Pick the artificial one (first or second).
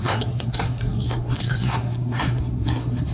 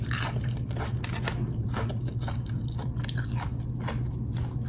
first